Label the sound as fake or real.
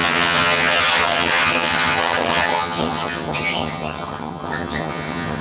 fake